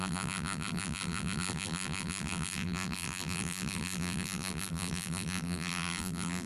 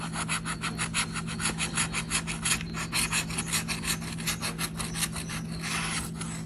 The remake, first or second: first